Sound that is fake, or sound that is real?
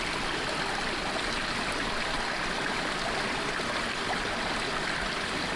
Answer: real